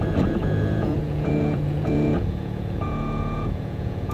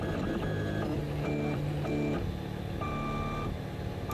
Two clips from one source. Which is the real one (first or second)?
second